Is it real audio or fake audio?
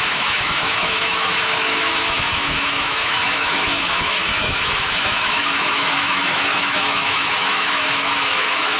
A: fake